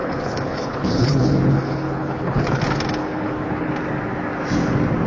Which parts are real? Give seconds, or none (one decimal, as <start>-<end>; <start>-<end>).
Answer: 2.6-3.0; 3.7-5.1